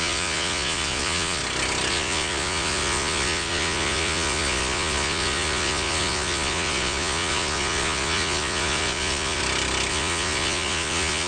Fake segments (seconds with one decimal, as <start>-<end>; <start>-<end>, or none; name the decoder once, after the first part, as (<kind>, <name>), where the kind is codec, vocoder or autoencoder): 0.0-1.4 (vocoder, Vocos); 1.9-9.4; 9.9-11.3